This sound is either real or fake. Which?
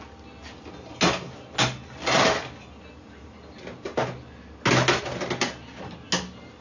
real